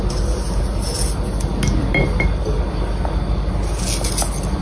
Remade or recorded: recorded